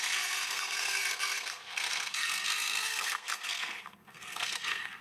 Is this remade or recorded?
remade